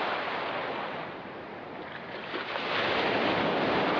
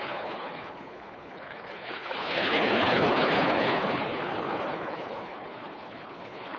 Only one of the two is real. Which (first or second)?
first